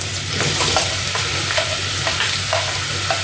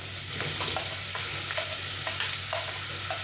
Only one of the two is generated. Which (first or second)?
first